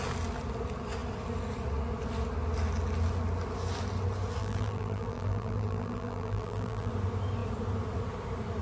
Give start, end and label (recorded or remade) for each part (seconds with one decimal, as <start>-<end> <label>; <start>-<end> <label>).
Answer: 0.0-4.4 recorded; 4.4-6.9 remade; 6.9-8.6 recorded